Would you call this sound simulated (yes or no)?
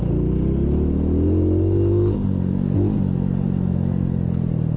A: no